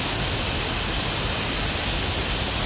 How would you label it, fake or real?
real